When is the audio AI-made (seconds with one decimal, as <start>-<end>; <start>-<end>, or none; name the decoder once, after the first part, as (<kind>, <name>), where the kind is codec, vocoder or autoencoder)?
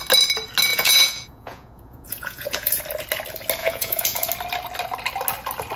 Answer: 0.7-2.8 (vocoder, Vocos); 3.6-4.3